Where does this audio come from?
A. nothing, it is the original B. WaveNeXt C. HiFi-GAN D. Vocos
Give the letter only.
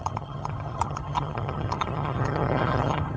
C